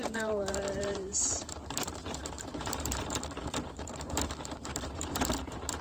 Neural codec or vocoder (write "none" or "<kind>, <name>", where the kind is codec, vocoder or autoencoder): vocoder, BigVGAN v2